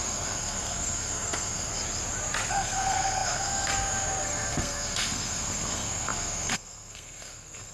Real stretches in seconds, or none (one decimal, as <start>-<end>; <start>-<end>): 1.7-2.5